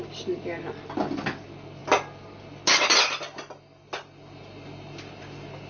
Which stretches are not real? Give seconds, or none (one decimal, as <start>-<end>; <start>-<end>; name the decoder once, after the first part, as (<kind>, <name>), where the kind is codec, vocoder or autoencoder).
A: none